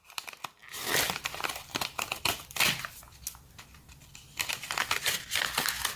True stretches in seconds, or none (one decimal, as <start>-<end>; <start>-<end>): 0.0-0.6; 3.0-6.0